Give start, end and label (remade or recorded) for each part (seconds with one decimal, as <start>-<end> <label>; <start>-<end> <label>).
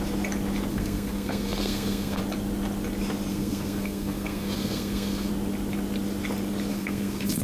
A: 0.0-0.7 recorded; 0.7-2.2 remade; 2.2-3.3 recorded; 3.3-5.3 remade; 5.3-6.7 recorded; 6.7-7.4 remade